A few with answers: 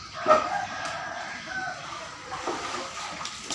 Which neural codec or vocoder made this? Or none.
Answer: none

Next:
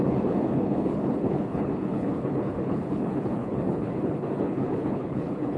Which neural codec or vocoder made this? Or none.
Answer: codec, HILCodec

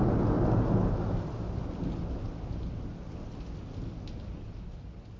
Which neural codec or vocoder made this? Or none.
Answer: none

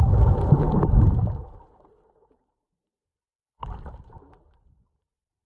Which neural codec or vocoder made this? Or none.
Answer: none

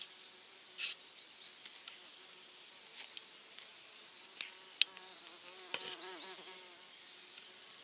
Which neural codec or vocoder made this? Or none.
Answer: none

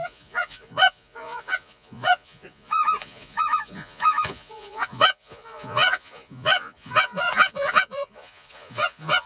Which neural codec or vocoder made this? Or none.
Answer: vocoder, Vocos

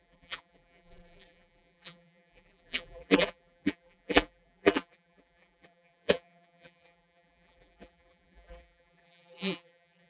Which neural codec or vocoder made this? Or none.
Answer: vocoder, BigVGAN v2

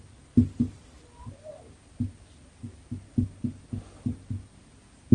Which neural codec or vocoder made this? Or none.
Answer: none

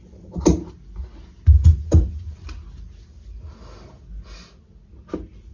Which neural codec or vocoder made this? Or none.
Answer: none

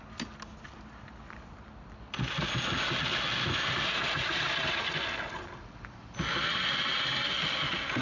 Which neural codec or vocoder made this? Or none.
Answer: none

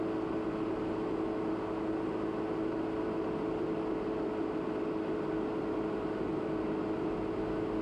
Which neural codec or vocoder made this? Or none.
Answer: none